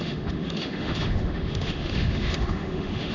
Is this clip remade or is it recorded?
remade